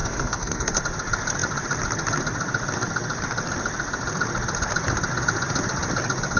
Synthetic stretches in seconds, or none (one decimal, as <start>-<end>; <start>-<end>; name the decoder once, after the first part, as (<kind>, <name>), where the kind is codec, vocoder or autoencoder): 0.0-0.8 (codec, SNAC)